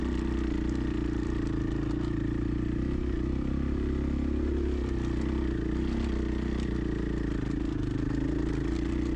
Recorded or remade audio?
recorded